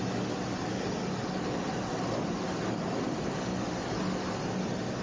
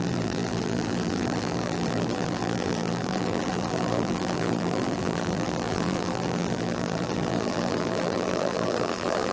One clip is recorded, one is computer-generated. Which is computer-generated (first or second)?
second